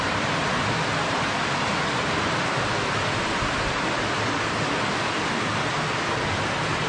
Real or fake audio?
real